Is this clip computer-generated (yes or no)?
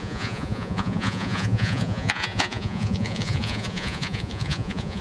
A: yes